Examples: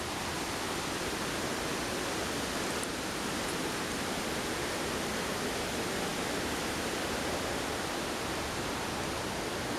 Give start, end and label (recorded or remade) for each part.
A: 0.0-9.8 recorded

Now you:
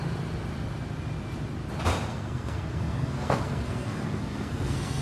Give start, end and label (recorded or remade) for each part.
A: 0.0-2.1 recorded; 2.1-5.0 remade

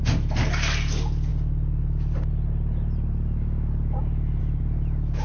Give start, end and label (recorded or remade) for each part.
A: 0.0-5.2 recorded

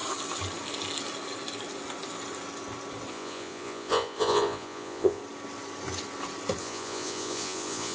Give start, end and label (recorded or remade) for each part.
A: 0.0-3.1 recorded; 3.1-5.2 remade; 5.2-6.6 recorded; 6.6-7.9 remade

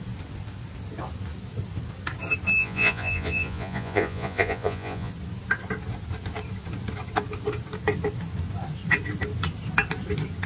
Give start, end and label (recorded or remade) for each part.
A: 0.0-2.6 recorded; 2.6-5.1 remade; 5.1-10.5 recorded

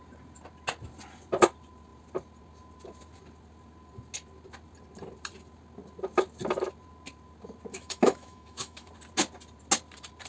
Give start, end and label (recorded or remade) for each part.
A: 0.0-7.7 recorded; 7.7-8.9 remade; 8.9-10.3 recorded

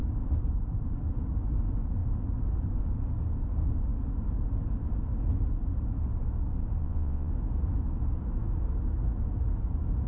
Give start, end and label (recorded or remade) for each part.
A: 0.0-6.8 recorded; 6.8-7.3 remade; 7.3-10.1 recorded